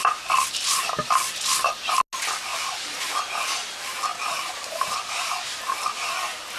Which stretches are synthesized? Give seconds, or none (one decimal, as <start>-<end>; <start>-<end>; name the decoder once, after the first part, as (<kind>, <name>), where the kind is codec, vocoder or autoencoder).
2.5-3.1 (vocoder, BigVGAN v2); 4.1-5.6